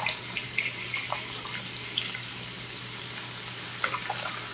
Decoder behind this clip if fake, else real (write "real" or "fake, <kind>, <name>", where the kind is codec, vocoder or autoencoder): real